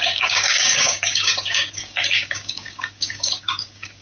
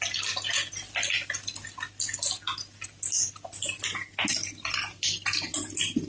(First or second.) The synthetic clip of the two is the first